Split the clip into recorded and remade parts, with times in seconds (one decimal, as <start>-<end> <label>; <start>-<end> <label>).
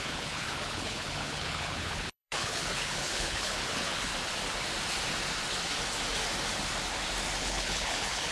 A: 0.0-4.1 remade; 4.1-7.4 recorded; 7.4-8.3 remade